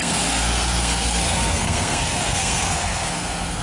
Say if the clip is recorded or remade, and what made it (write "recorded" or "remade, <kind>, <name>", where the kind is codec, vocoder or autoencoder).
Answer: remade, codec, SNAC